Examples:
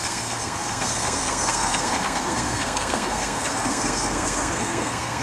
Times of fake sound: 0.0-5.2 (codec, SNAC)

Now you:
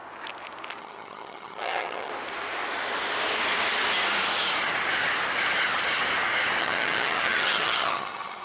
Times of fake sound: 0.8-2.1 (vocoder, HiFi-GAN); 6.6-8.4

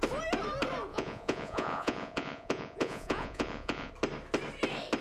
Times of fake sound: 0.9-3.9 (vocoder, Vocos)

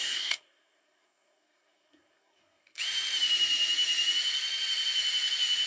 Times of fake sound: 0.0-2.8 (codec, SNAC)

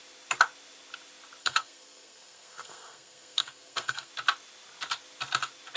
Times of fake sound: 1.4-4.1 (codec, SNAC)